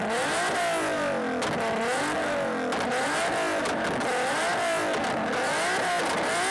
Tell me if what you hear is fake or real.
real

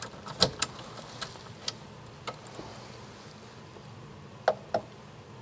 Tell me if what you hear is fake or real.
real